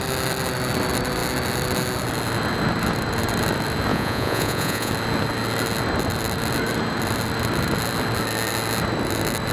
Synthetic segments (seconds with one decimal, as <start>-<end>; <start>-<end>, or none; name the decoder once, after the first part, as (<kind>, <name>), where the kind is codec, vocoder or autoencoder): 3.9-4.9 (vocoder, Vocos)